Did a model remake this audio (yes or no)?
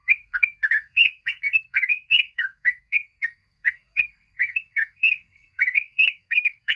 yes